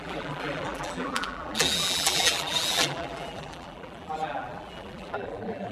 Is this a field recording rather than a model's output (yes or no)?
no